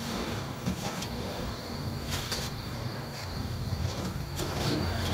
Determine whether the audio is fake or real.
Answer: fake